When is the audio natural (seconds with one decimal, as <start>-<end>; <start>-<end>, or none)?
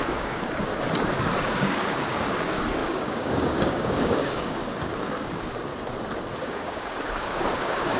0.7-1.4; 5.7-6.4